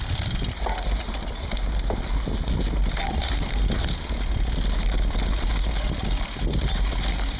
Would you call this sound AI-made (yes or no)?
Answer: no